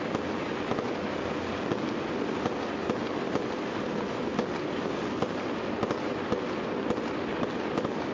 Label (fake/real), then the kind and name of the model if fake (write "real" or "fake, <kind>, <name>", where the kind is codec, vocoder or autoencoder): real